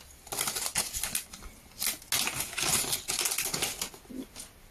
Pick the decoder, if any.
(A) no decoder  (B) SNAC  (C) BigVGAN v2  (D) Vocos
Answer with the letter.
A